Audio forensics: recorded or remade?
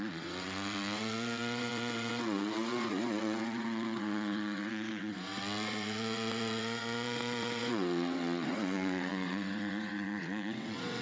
remade